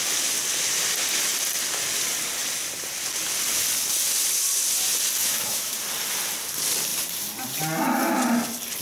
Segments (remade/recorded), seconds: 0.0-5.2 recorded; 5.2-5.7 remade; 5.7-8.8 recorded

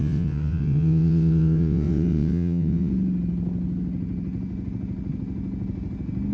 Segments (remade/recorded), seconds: 0.0-2.9 remade; 2.9-6.3 recorded

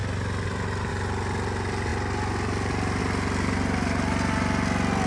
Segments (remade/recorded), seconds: 0.0-5.1 recorded